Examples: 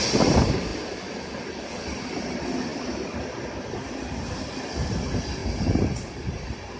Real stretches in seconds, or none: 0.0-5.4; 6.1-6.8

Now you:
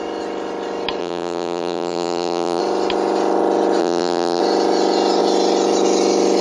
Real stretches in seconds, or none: 0.0-1.0; 2.6-3.8; 4.4-6.4

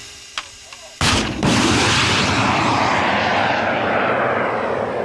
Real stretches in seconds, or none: 2.2-5.0

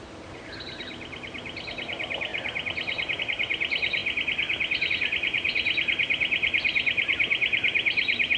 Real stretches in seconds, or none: 4.0-4.9

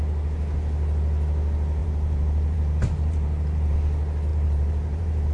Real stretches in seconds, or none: 0.0-1.8; 3.7-4.3